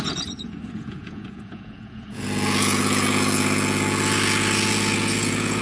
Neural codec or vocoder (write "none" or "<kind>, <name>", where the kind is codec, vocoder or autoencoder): vocoder, Vocos